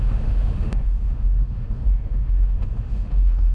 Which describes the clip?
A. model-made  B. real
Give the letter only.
A